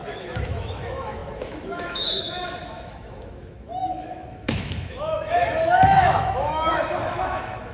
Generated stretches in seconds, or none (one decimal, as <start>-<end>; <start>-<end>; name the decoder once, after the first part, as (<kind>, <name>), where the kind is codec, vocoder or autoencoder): 0.0-7.7 (autoencoder, DAC-VAE)